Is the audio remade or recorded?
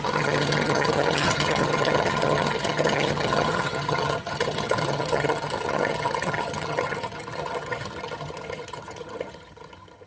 remade